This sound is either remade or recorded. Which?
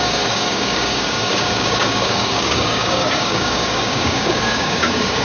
remade